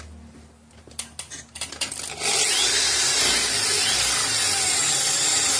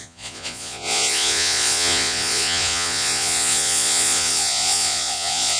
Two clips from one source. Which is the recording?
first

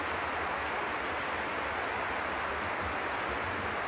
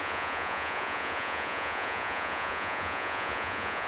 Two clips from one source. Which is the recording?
first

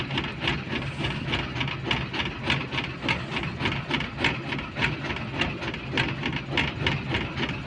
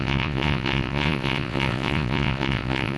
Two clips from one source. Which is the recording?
first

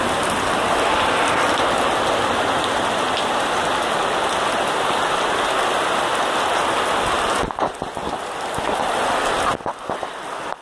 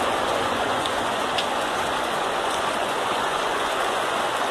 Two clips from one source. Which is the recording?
first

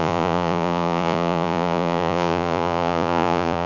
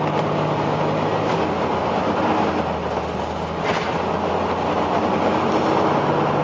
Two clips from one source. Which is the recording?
second